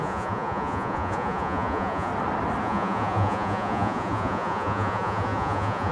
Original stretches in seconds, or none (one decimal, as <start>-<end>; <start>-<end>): 2.1-2.6

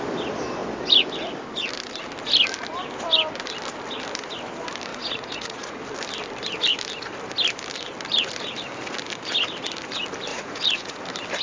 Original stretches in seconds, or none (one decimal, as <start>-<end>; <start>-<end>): 0.0-4.9; 5.8-10.3; 11.0-11.4

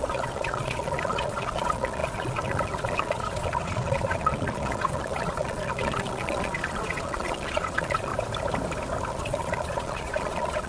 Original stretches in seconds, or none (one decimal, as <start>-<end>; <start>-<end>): 8.1-9.1

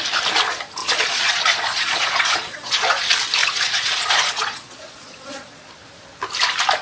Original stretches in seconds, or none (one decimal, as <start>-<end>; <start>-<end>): 0.0-0.8; 3.0-3.4; 5.7-6.8

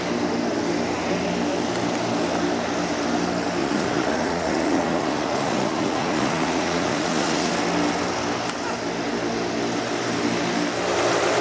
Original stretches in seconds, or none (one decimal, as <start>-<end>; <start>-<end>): 0.0-3.6; 7.5-11.4

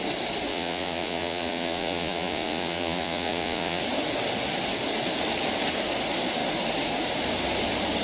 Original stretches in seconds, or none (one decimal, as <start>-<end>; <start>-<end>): 0.0-0.5; 3.8-8.0